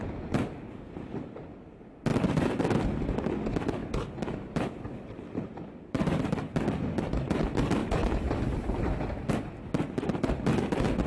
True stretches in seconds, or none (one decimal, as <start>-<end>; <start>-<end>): 0.0-3.8; 6.5-7.8; 9.3-11.1